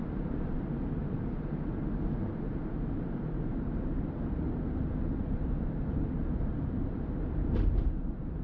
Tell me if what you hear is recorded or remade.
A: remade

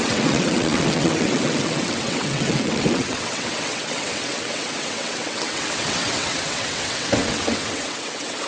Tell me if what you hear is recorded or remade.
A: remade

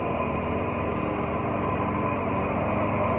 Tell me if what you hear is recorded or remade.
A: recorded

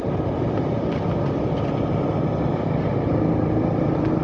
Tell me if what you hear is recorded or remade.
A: recorded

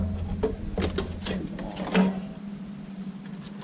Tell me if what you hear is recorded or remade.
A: recorded